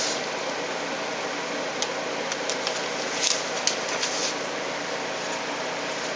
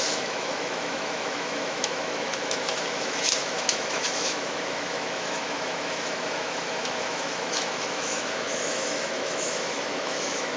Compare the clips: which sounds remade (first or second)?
second